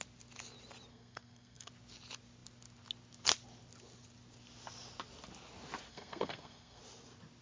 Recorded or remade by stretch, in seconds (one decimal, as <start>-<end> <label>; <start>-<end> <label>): 0.0-0.9 recorded; 0.9-1.7 remade; 1.7-5.9 recorded; 5.9-6.8 remade; 6.8-7.4 recorded